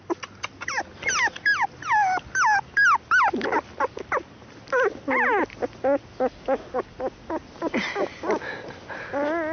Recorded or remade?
recorded